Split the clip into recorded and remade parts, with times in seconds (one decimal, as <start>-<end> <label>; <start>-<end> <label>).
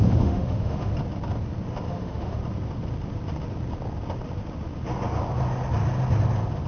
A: 0.0-0.9 remade; 0.9-1.9 recorded; 1.9-2.4 remade; 2.4-6.7 recorded